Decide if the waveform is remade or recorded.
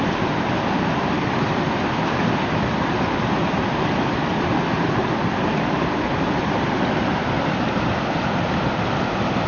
recorded